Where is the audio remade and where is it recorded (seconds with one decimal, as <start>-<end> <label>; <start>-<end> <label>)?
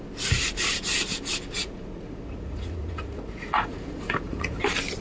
0.0-1.6 recorded; 1.6-4.6 remade; 4.6-5.0 recorded